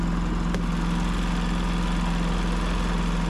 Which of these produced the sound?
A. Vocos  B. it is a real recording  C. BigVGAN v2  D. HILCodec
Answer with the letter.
B